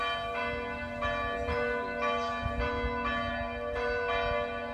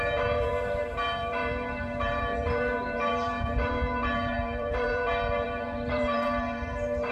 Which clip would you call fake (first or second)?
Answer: second